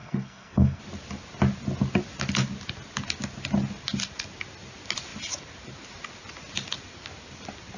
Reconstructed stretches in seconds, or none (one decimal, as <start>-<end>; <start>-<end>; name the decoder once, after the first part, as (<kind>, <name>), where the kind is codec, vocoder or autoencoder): 0.0-0.8 (codec, SNAC)